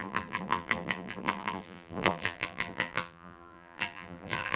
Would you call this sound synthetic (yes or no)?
yes